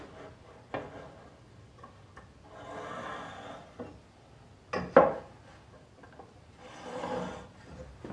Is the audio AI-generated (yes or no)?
no